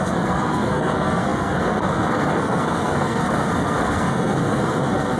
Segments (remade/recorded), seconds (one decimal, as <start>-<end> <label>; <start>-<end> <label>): 0.0-5.2 remade